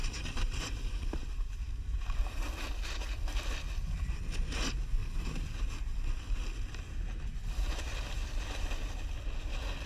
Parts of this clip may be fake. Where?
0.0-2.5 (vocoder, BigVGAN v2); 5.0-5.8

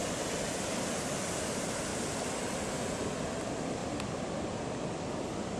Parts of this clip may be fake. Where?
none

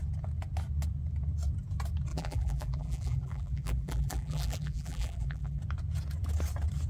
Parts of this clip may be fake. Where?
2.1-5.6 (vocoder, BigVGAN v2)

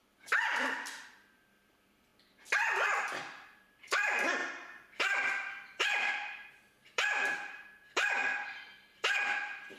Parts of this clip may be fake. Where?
1.0-2.1 (vocoder, BigVGAN v2); 2.7-4.4; 5.0-9.8

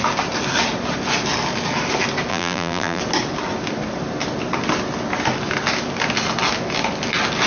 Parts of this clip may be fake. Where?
2.3-3.0 (vocoder, BigVGAN v2)

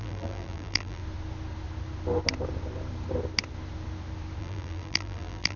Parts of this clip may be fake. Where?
0.0-1.0 (vocoder, BigVGAN v2); 4.4-5.6

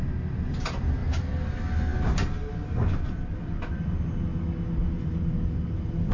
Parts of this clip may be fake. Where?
1.0-1.5 (vocoder, BigVGAN v2); 4.8-6.1

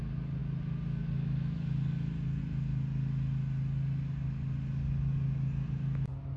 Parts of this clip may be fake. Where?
none